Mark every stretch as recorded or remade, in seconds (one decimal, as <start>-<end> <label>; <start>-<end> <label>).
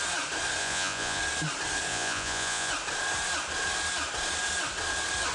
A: 0.0-0.6 recorded; 0.6-1.2 remade; 1.2-1.9 recorded; 1.9-2.7 remade; 2.7-5.3 recorded